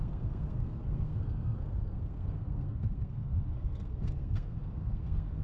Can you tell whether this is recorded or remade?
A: remade